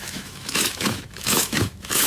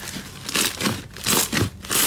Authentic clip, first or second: second